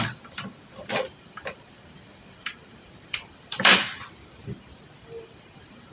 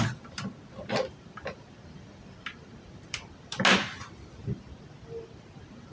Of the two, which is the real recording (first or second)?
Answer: second